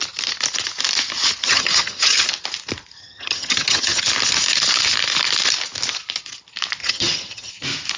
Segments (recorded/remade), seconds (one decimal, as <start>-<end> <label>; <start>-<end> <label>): 0.0-1.4 recorded; 1.4-2.2 remade; 2.2-3.0 recorded; 3.0-4.0 remade; 4.0-6.8 recorded; 6.8-7.5 remade; 7.5-8.0 recorded